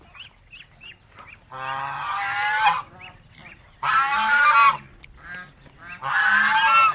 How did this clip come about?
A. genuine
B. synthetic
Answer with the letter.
A